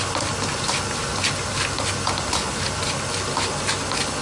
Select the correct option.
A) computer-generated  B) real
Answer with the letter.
B